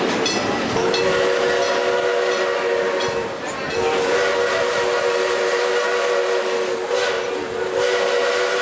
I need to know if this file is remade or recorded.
recorded